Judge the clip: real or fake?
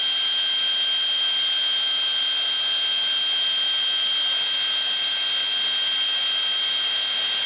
real